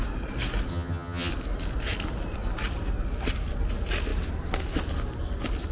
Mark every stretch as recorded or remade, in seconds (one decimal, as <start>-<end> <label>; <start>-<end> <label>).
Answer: 0.0-0.7 recorded; 0.7-1.3 remade; 1.3-5.7 recorded